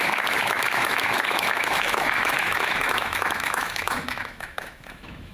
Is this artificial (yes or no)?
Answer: yes